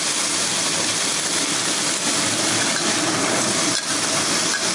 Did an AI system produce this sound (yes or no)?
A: yes